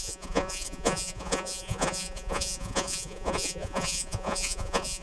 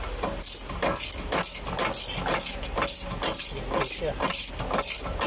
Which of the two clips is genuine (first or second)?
second